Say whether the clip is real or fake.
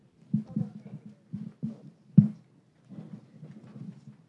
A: fake